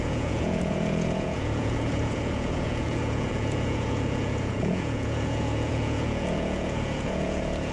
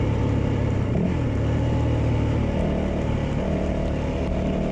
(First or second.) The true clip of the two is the second